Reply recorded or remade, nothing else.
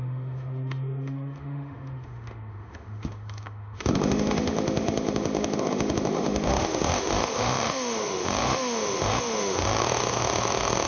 remade